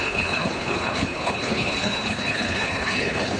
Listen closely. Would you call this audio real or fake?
fake